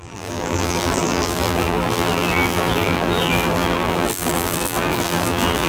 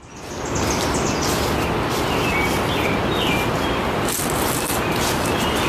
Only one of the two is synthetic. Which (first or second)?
first